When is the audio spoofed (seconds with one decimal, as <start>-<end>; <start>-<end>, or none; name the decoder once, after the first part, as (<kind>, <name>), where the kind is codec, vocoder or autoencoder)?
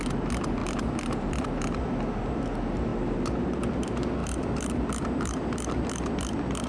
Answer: 0.6-1.5 (vocoder, BigVGAN v2); 4.2-6.2